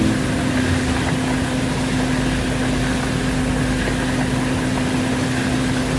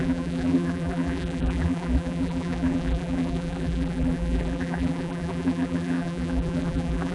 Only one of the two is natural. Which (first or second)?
first